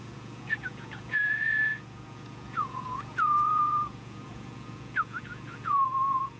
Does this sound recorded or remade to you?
remade